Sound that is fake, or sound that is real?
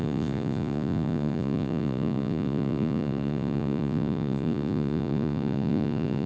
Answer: fake